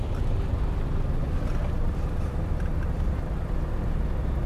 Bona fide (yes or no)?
yes